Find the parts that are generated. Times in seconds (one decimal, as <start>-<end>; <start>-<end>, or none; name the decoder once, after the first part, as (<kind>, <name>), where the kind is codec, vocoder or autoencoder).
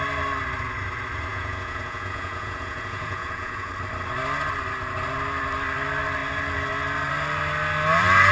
1.3-3.7 (vocoder, Vocos)